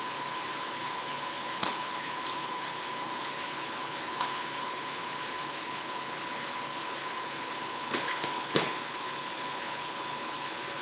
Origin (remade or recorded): remade